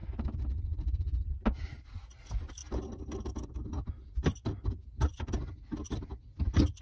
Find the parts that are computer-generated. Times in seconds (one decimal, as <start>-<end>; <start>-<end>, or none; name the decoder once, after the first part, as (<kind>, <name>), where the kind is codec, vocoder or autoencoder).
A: none